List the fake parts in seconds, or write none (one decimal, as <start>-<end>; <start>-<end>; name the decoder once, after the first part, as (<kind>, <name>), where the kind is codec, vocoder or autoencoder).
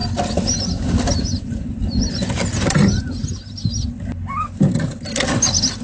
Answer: none